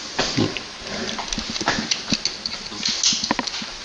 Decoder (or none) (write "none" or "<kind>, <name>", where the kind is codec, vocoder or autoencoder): none